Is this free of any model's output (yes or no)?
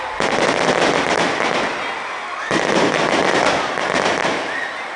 yes